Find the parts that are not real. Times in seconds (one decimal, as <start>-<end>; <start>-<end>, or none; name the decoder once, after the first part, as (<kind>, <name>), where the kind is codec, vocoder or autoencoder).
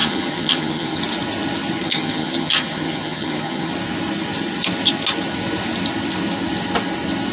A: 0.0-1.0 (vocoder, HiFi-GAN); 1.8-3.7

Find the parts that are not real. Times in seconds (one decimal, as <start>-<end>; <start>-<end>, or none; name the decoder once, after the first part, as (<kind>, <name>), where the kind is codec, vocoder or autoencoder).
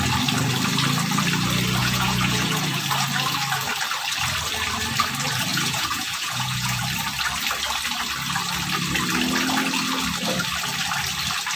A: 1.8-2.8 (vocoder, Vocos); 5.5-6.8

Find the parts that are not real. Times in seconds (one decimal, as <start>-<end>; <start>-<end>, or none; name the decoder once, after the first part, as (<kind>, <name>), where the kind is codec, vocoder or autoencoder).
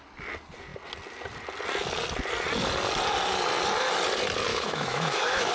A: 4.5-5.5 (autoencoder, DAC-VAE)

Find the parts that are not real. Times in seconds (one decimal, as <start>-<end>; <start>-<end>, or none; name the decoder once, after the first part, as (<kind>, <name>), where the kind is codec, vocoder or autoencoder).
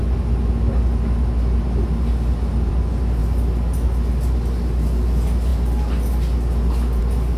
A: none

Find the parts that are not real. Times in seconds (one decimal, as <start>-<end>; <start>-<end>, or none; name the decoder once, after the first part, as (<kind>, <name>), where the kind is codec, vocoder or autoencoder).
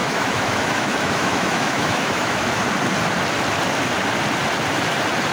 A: 0.0-2.6 (autoencoder, DAC-VAE)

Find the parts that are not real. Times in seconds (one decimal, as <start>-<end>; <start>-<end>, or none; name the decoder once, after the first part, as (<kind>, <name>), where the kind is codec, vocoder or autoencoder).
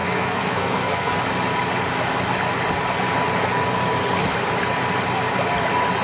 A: 0.0-1.2 (codec, SNAC)